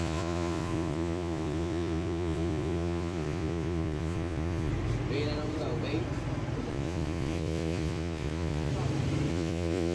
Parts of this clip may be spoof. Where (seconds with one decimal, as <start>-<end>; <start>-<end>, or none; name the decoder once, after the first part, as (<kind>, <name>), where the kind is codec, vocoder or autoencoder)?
0.0-4.7 (vocoder, Vocos); 6.7-8.7; 9.3-9.9